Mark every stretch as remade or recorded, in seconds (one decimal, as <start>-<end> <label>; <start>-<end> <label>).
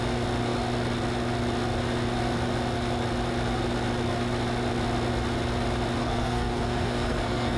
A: 0.0-6.0 recorded; 6.0-7.6 remade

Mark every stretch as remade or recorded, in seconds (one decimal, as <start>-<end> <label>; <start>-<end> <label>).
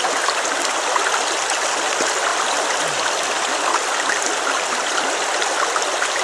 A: 0.0-6.2 recorded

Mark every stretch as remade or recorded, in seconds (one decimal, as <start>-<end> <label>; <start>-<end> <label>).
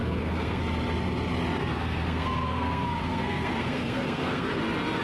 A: 0.0-0.6 remade; 0.6-1.6 recorded; 1.6-4.6 remade; 4.6-5.0 recorded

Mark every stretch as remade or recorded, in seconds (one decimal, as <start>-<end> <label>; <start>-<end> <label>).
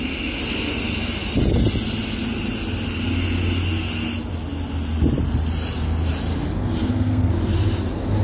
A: 0.0-6.8 recorded; 6.8-7.3 remade; 7.3-8.2 recorded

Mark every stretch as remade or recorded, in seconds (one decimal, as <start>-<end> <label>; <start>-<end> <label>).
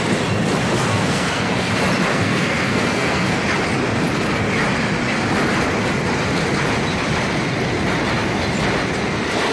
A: 0.0-0.9 recorded; 0.9-1.7 remade; 1.7-2.1 recorded; 2.1-3.4 remade; 3.4-9.5 recorded